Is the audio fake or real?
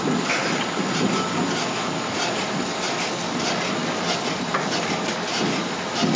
real